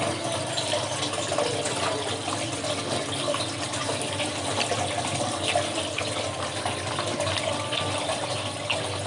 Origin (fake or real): real